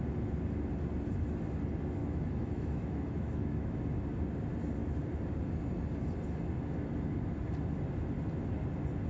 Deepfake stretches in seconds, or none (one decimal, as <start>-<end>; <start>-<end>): 2.0-3.8